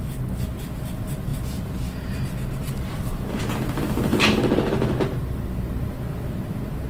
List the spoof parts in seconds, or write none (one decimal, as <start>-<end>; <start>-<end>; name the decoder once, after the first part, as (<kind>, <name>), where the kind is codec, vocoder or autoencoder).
1.3-3.4 (vocoder, BigVGAN v2); 4.1-4.9